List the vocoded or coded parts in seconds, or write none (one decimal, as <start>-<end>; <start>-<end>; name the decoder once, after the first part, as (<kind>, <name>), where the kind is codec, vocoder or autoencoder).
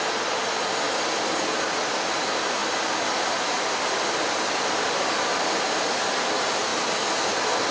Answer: none